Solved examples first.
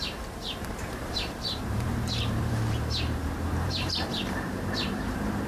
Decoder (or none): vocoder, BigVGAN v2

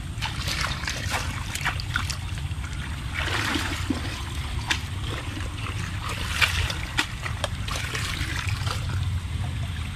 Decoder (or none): vocoder, BigVGAN v2